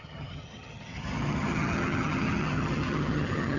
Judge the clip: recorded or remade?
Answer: remade